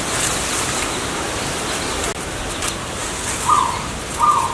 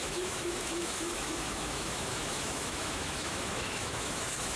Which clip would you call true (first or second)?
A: first